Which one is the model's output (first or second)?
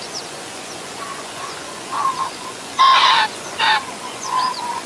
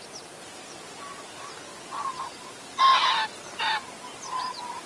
first